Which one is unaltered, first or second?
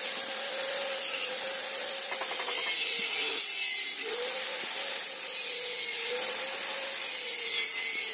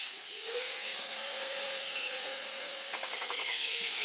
first